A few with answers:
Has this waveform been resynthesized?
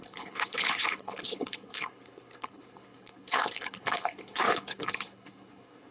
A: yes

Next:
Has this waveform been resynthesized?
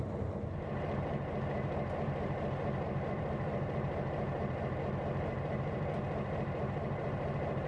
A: yes